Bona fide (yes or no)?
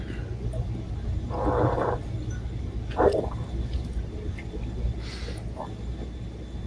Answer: yes